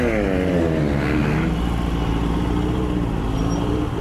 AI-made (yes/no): no